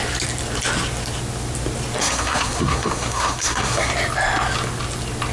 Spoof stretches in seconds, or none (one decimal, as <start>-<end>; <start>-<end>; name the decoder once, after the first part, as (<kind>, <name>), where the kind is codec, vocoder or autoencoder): 2.0-3.9 (codec, SNAC)